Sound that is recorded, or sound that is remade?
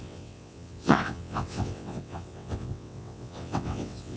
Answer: remade